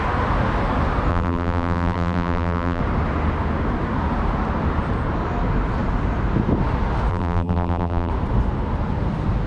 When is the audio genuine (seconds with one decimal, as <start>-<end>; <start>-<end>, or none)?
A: 0.0-1.1; 2.8-7.1; 8.1-9.5